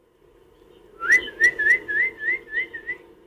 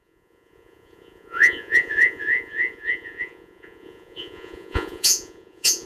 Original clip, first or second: first